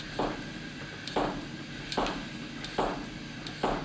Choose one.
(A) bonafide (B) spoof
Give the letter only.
A